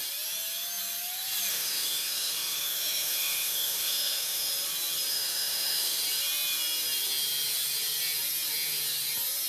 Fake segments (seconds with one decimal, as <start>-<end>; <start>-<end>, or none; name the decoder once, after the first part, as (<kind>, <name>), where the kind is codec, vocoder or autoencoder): 1.5-4.5 (autoencoder, DAC-VAE); 5.1-6.0